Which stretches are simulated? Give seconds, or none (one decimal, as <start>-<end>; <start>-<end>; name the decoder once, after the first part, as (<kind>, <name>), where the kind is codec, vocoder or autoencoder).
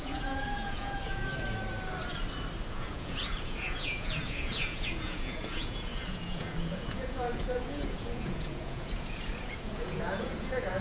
0.0-1.3 (vocoder, Vocos); 2.7-10.8